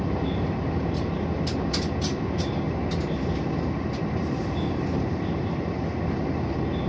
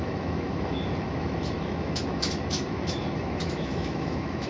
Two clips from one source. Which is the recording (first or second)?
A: first